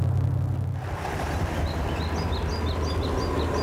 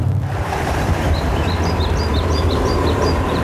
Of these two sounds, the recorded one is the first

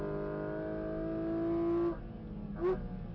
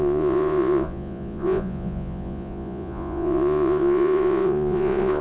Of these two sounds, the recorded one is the first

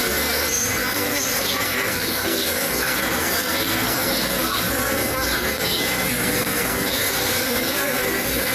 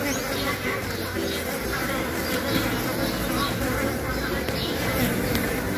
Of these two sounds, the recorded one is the second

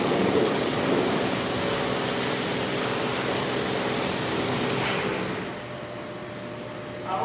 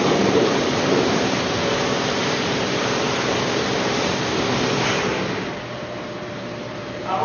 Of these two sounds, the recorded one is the first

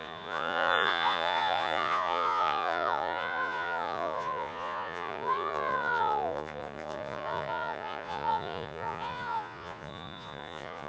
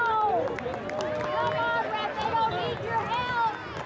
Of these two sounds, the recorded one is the second